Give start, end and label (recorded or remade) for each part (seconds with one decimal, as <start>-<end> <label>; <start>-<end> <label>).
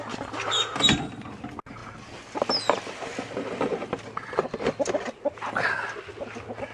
0.0-6.7 recorded